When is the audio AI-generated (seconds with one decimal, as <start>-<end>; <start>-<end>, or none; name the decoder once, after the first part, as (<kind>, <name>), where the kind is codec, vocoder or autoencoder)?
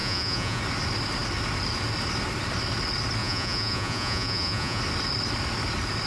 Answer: 0.0-0.6 (vocoder, Vocos); 3.2-4.8